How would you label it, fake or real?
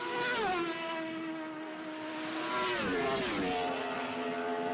real